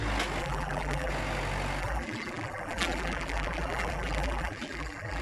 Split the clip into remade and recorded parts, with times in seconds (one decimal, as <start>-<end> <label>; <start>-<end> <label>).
0.0-0.4 recorded; 0.4-1.1 remade; 1.1-1.8 recorded; 1.8-5.2 remade